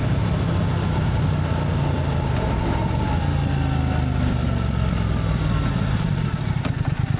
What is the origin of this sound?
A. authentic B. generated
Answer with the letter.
A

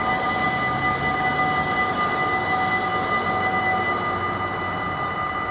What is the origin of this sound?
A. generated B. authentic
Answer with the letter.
B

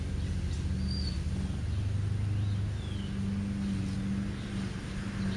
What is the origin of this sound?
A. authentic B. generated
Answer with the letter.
A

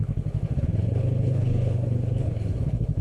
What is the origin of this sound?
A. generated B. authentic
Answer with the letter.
A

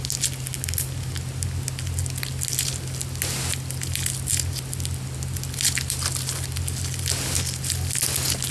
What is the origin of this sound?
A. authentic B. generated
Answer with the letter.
A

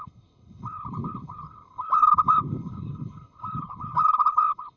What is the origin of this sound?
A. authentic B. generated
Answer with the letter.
B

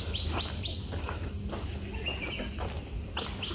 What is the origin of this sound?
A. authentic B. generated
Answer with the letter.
A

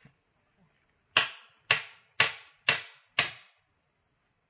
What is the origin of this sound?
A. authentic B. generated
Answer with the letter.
A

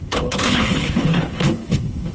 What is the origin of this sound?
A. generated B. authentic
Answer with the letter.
A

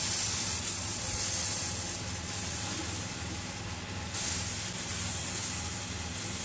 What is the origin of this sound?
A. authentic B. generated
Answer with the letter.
A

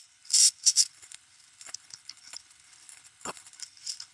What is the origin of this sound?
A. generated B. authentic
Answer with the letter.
A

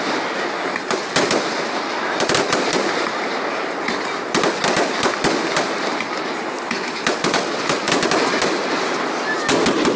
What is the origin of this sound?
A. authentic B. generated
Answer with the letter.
A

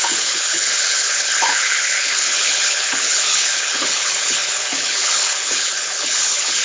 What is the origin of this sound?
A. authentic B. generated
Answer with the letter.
B